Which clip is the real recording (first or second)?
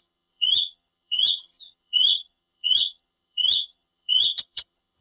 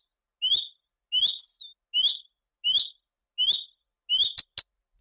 second